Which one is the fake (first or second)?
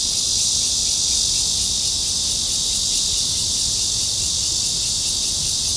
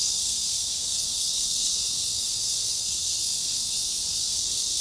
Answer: second